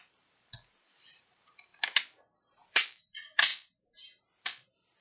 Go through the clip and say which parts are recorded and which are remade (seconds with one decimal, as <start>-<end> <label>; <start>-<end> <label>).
0.0-1.7 remade; 1.7-2.4 recorded; 2.4-5.0 remade